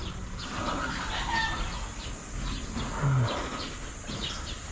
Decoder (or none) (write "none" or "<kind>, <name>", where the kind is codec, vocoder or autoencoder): none